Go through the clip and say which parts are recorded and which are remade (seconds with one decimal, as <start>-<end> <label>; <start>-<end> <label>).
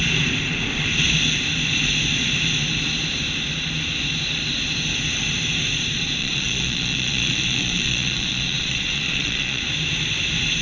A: 0.0-6.2 recorded; 6.2-9.6 remade; 9.6-10.6 recorded